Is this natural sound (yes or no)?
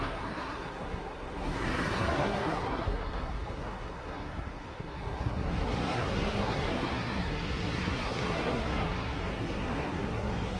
no